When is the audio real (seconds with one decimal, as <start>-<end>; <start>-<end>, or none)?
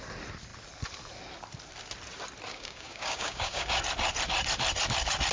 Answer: 0.0-2.5; 3.8-5.3